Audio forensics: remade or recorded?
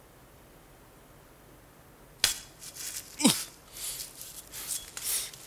recorded